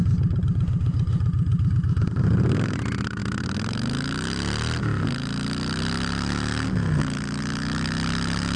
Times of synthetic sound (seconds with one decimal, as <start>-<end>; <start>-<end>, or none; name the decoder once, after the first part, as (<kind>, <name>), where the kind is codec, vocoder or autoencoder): none